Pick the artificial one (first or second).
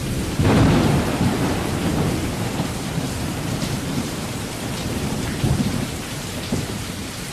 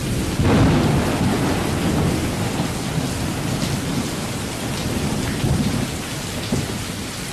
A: first